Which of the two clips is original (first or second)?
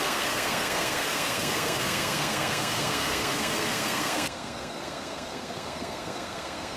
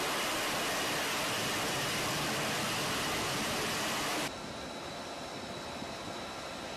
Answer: second